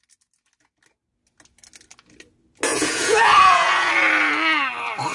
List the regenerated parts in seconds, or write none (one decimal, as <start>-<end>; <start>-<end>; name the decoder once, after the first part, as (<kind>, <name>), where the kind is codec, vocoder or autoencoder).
2.7-3.9 (vocoder, Vocos)